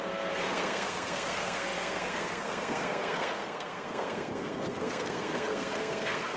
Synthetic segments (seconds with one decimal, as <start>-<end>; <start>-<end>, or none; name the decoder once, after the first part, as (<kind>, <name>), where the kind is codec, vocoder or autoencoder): 0.0-6.4 (codec, SNAC)